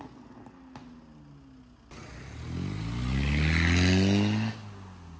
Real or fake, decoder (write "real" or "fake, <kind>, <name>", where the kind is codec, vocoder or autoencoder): real